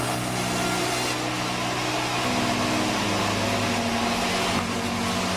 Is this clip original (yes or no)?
yes